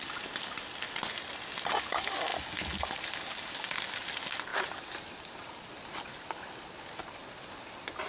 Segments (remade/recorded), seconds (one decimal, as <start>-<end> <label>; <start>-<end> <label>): 0.0-8.1 recorded